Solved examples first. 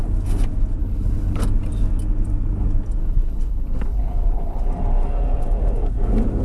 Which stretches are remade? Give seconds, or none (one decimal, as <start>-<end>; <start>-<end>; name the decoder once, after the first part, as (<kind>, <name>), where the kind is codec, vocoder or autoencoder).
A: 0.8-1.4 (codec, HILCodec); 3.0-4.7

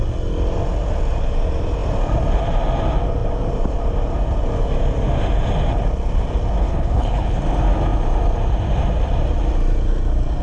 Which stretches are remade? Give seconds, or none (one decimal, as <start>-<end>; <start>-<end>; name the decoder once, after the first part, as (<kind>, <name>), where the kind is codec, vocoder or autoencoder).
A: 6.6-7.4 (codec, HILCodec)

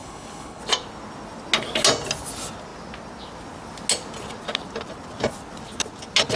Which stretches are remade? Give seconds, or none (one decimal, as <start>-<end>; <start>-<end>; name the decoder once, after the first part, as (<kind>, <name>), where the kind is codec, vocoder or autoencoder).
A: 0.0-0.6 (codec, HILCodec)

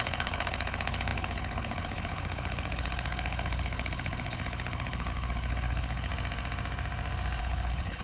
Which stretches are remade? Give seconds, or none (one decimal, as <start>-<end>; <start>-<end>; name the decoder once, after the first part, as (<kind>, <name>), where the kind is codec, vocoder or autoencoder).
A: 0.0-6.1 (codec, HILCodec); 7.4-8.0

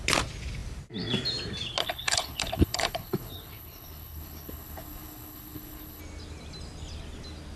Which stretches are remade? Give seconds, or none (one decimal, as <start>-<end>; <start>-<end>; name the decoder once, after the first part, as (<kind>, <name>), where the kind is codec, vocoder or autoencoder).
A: 1.8-6.0 (codec, HILCodec)

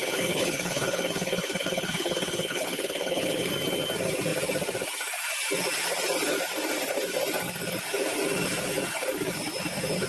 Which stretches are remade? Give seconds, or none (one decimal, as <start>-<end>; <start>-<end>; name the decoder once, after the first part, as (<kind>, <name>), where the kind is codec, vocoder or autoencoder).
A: 0.0-3.5 (codec, HILCodec)

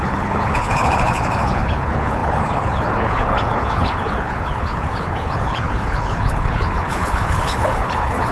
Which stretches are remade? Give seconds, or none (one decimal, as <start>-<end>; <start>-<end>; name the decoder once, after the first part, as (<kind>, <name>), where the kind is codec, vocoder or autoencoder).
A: 0.0-8.3 (codec, HILCodec)

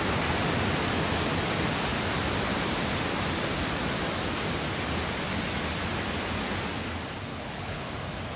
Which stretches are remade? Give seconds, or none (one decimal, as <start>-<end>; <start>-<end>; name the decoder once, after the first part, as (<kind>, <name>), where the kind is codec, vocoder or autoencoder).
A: 7.3-7.9 (codec, HILCodec)